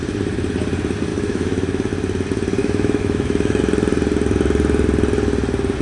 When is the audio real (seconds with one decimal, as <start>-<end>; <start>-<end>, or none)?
0.0-1.1; 1.9-2.6; 3.6-5.8